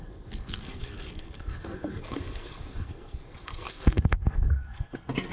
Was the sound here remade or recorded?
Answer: remade